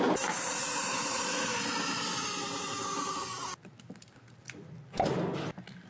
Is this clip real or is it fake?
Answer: real